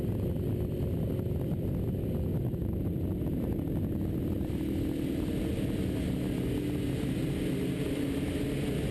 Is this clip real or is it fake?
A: real